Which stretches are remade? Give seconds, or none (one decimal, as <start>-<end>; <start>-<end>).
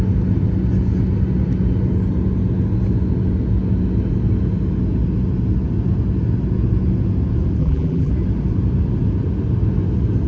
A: 7.6-8.1